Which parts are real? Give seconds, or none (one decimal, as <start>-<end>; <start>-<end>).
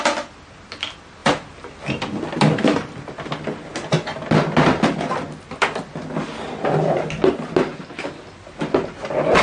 0.0-9.4